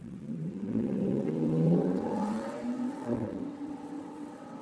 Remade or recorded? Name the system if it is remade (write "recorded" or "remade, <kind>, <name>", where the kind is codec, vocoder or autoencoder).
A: remade, vocoder, WaveNeXt